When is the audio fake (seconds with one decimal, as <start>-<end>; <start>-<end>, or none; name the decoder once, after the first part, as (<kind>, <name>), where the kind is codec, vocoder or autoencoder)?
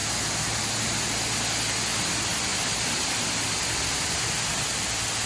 2.5-4.2 (vocoder, BigVGAN v2)